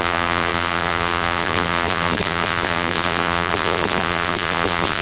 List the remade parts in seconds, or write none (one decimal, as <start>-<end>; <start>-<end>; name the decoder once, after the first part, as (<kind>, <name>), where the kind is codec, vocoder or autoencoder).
0.0-5.0 (vocoder, BigVGAN v2)